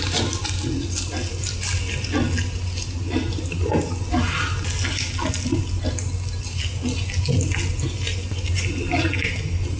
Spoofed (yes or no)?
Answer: no